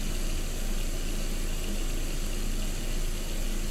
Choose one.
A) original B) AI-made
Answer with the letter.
A